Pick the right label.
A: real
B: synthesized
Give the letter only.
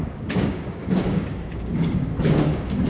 B